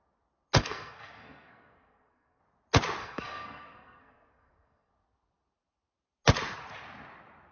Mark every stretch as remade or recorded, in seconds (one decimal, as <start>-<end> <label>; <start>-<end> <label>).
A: 0.0-0.6 recorded; 0.6-2.4 remade; 2.4-3.0 recorded; 3.0-4.9 remade; 4.9-7.5 recorded